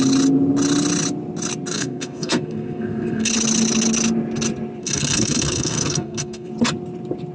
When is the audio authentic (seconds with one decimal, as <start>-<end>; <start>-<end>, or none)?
0.0-1.7; 3.3-4.8; 6.5-7.3